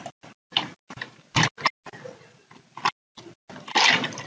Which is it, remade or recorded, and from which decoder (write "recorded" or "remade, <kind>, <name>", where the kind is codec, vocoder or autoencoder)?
recorded